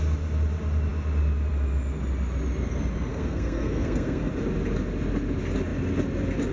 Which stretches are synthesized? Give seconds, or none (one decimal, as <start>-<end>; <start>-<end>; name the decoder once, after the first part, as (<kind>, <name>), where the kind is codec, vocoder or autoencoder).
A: 3.1-4.3 (codec, SNAC)